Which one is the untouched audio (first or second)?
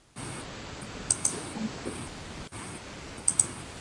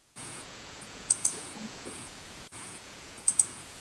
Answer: first